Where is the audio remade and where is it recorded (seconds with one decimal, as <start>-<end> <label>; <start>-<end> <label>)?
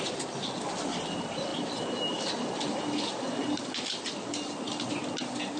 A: 0.0-5.6 recorded